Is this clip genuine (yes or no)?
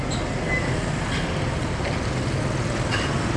yes